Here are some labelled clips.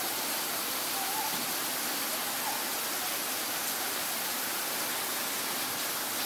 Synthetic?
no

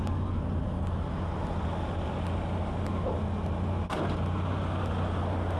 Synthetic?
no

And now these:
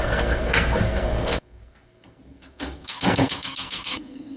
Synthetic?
yes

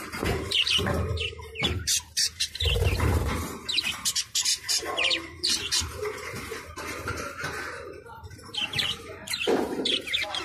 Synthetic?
yes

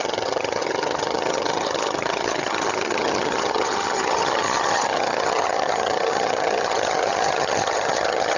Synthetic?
yes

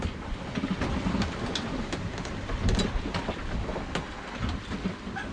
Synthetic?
no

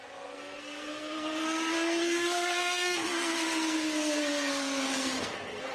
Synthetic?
yes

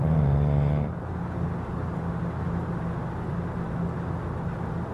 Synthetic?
no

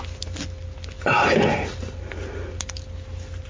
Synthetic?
no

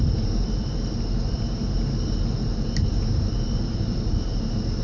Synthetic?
yes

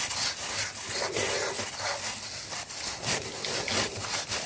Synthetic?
no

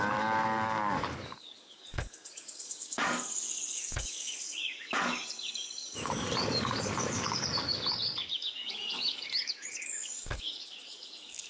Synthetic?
yes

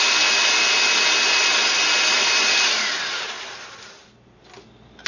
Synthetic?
no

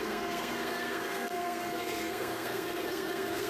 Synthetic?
yes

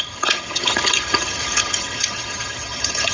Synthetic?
yes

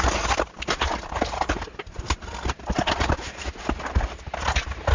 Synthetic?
no